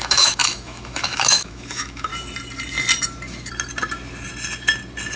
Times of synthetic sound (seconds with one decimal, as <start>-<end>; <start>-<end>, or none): 0.0-2.1